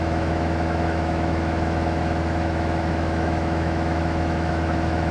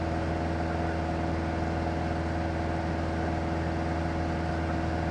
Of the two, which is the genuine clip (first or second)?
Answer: second